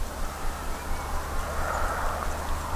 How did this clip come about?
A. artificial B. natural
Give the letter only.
B